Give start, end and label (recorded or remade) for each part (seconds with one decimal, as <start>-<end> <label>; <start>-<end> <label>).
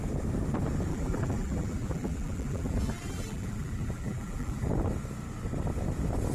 0.0-0.9 recorded; 0.9-4.7 remade; 4.7-6.3 recorded